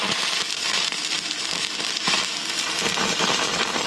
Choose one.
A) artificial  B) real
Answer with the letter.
A